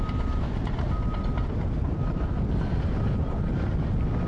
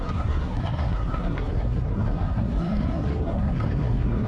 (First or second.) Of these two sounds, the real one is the first